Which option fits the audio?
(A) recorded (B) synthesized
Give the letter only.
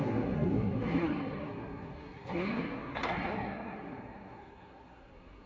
B